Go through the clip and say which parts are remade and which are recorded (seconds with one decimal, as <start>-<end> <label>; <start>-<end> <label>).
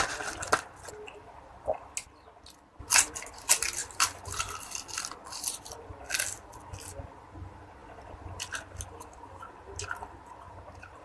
0.0-11.0 recorded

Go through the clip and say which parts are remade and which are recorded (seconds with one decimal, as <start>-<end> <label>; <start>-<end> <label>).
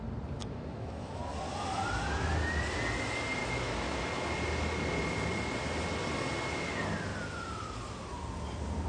0.0-0.4 recorded; 0.4-1.2 remade; 1.2-3.4 recorded; 3.4-4.0 remade; 4.0-8.9 recorded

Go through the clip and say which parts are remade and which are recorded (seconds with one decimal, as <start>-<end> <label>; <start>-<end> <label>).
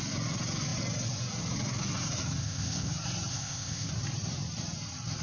0.0-2.4 recorded; 2.4-2.9 remade; 2.9-3.3 recorded; 3.3-3.9 remade; 3.9-5.2 recorded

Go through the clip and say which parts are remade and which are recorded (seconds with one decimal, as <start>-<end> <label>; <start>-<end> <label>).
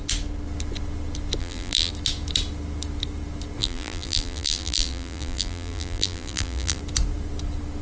0.0-1.4 recorded; 1.4-1.9 remade; 1.9-3.6 recorded; 3.6-6.8 remade; 6.8-7.8 recorded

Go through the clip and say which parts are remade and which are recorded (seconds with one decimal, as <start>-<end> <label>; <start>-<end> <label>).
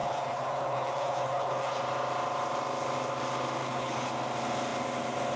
0.0-1.8 remade; 1.8-3.6 recorded; 3.6-4.1 remade; 4.1-5.4 recorded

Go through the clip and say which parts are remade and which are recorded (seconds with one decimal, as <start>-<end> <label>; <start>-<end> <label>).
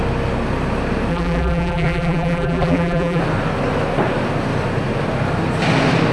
0.0-1.1 recorded; 1.1-3.2 remade; 3.2-6.1 recorded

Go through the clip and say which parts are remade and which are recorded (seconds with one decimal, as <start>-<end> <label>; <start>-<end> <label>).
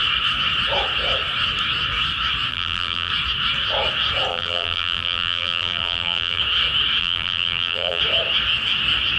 0.0-2.5 recorded; 2.5-3.1 remade; 3.1-4.3 recorded; 4.3-6.4 remade; 6.4-7.0 recorded; 7.0-8.0 remade; 8.0-9.2 recorded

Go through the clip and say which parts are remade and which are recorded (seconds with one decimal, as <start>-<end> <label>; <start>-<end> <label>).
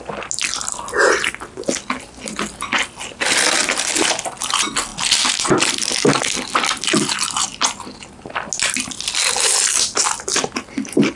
0.0-11.2 recorded